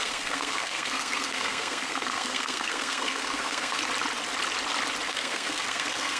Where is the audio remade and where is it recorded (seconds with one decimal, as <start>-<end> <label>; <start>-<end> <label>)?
0.0-3.8 remade; 3.8-5.1 recorded; 5.1-6.2 remade